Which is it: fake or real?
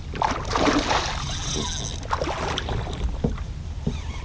real